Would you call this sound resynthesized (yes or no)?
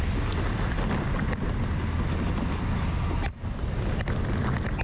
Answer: no